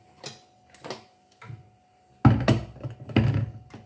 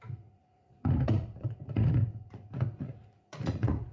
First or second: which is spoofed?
second